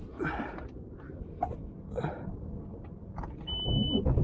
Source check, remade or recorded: recorded